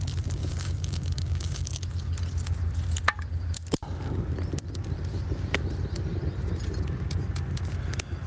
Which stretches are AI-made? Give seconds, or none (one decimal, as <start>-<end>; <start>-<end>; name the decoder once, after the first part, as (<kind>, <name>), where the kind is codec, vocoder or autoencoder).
0.4-1.7 (codec, DAC)